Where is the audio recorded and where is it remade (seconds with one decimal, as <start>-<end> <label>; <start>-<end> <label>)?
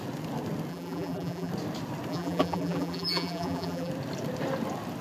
0.0-0.7 recorded; 0.7-1.5 remade; 1.5-2.1 recorded; 2.1-3.9 remade; 3.9-5.0 recorded